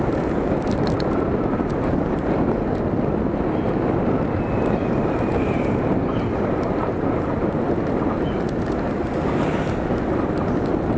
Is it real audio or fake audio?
real